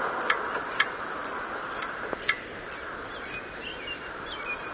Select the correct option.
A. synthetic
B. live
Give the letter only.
B